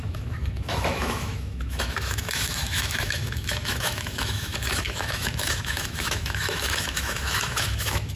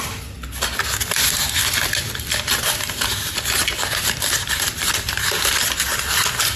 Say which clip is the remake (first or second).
first